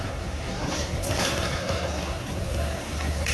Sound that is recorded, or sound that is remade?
remade